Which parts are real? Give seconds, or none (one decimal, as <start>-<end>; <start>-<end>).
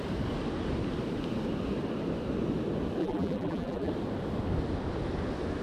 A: 0.0-3.0; 3.9-5.6